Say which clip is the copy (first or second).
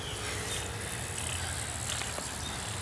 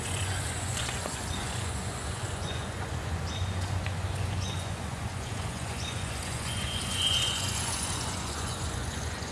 second